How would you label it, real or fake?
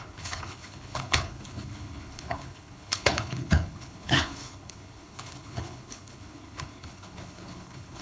fake